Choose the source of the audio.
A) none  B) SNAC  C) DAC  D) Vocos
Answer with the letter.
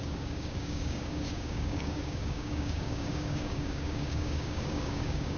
C